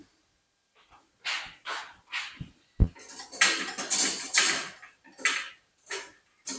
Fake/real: real